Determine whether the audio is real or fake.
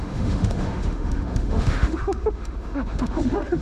fake